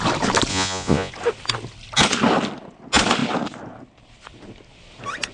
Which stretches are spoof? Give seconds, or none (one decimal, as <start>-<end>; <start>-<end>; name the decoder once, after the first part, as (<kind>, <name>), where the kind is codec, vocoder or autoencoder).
0.5-1.1 (vocoder, Vocos)